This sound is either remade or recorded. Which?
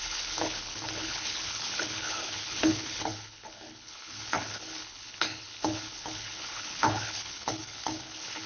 remade